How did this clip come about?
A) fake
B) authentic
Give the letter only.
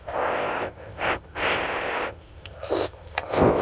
A